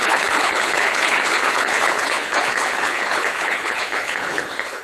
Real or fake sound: fake